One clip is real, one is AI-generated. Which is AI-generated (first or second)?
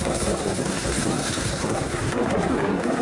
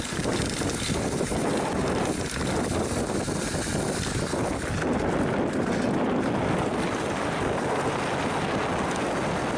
first